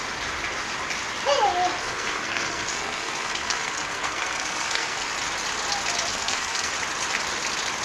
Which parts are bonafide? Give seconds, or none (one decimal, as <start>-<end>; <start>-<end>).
0.0-1.8; 5.1-6.1; 6.7-7.8